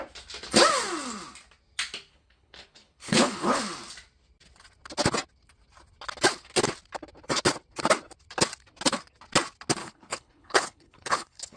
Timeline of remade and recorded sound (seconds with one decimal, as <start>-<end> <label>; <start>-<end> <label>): 0.0-2.1 recorded; 2.1-3.6 remade; 3.6-9.8 recorded; 9.8-11.6 remade